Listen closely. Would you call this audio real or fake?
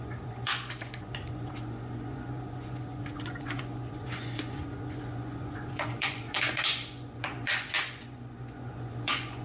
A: fake